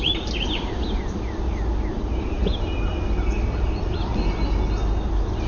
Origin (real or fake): real